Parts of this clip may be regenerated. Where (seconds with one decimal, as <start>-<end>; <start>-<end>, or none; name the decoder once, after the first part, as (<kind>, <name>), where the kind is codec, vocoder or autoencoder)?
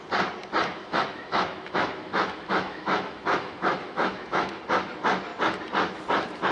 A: 0.7-4.6 (autoencoder, DAC-VAE)